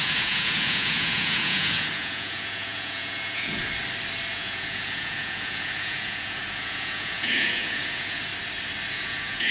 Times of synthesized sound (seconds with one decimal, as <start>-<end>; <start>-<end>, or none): 0.0-3.6; 4.3-8.3; 8.9-9.5